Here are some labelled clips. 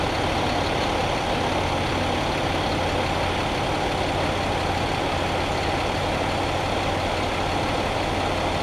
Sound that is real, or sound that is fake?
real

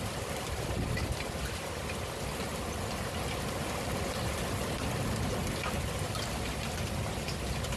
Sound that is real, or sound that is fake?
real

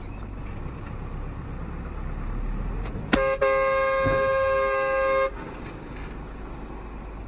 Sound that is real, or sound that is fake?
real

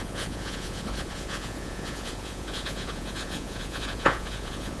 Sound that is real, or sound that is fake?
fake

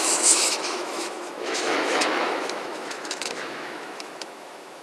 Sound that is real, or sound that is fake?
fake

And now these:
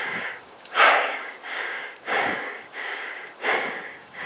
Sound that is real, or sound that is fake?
fake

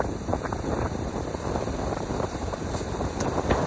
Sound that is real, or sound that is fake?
fake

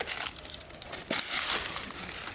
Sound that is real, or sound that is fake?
real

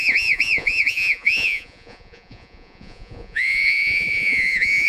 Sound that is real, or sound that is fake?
fake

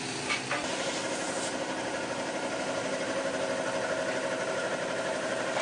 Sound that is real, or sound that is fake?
real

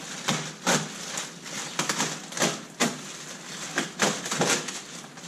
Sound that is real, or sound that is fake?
real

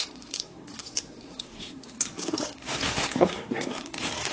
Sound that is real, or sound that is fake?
fake